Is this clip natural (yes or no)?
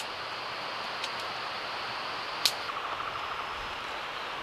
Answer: yes